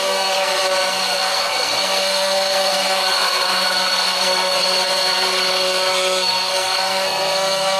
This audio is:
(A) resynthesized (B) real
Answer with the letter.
A